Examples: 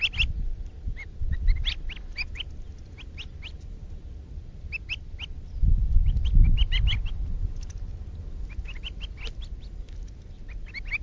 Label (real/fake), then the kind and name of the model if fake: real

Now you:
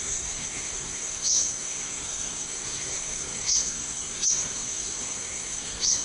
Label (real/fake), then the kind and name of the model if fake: fake, codec, SNAC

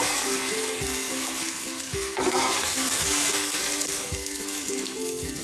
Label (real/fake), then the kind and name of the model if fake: fake, codec, SNAC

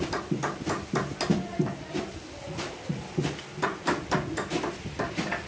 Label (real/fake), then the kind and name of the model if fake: real